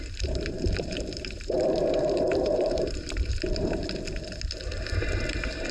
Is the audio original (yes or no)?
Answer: no